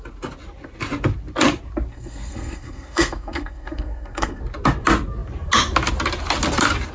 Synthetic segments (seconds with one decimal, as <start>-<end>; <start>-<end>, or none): 1.9-4.4